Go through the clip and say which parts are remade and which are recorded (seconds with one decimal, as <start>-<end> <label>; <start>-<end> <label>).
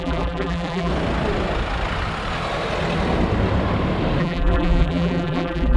0.0-0.9 remade; 0.9-4.2 recorded; 4.2-5.8 remade